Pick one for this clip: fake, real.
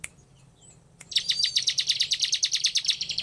fake